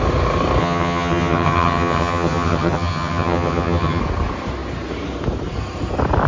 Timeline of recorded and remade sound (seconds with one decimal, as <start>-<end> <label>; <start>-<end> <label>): 0.0-0.6 recorded; 0.6-4.0 remade; 4.0-6.3 recorded